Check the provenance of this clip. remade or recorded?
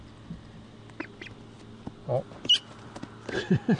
recorded